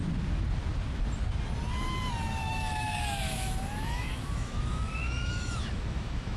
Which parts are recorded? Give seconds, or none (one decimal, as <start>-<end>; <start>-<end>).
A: 0.0-2.4